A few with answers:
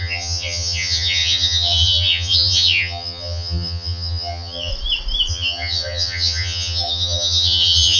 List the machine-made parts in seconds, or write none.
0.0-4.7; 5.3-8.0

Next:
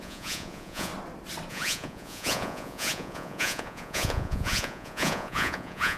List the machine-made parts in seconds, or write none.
0.0-0.9; 1.5-6.0

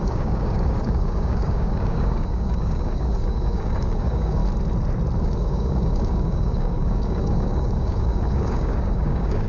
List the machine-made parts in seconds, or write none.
0.0-4.4; 5.2-9.5

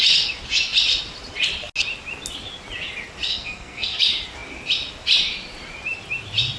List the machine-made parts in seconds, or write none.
3.3-4.0

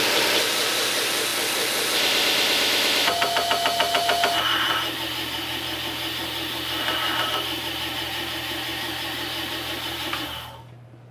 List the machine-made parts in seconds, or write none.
none

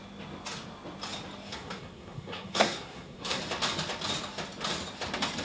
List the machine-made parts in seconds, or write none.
1.5-3.4

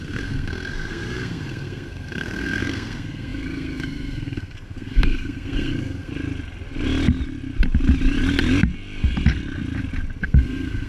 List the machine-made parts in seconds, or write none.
0.0-6.1; 10.2-10.9